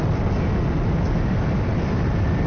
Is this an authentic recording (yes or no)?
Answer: no